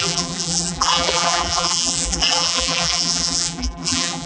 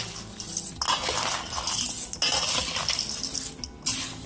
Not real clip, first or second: first